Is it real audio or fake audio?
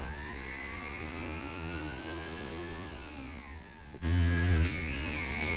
fake